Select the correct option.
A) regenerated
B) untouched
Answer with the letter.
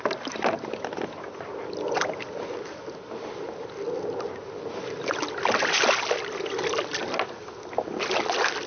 B